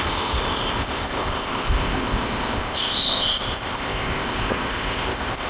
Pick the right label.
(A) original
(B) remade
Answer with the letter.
B